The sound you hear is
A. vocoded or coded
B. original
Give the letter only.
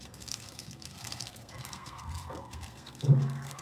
A